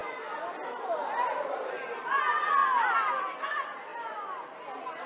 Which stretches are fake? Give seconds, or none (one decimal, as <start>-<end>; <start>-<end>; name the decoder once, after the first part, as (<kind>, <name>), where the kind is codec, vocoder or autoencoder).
none

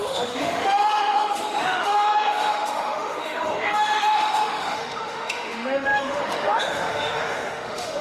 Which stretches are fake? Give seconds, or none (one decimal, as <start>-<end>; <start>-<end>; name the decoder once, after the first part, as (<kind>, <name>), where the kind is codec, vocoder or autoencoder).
0.0-8.0 (autoencoder, DAC-VAE)